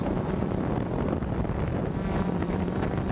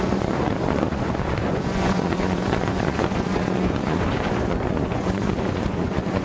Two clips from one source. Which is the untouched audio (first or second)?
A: first